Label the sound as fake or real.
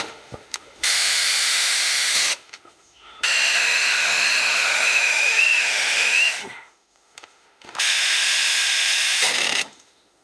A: fake